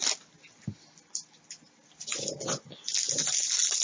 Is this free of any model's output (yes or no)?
yes